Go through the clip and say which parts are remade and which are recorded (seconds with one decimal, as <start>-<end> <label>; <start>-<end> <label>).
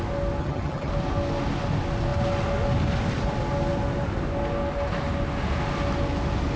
0.0-0.4 recorded; 0.4-0.9 remade; 0.9-6.6 recorded